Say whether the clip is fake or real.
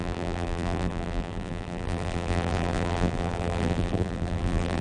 fake